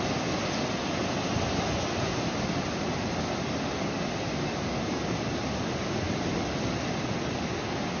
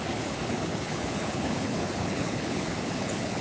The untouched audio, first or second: first